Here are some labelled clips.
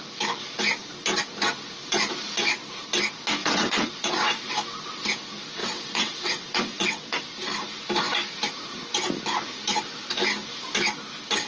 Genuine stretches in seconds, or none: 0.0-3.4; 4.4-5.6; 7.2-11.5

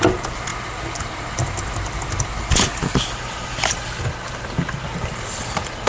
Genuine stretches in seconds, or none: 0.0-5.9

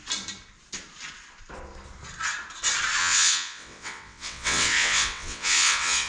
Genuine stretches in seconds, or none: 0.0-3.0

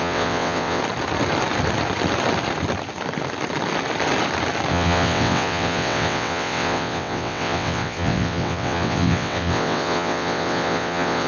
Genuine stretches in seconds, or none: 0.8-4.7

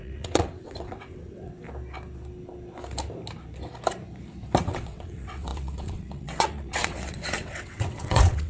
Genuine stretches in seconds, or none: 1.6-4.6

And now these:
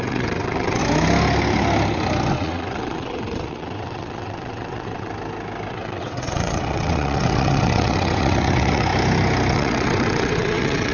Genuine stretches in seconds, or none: 0.8-2.3; 5.1-5.7; 8.9-9.5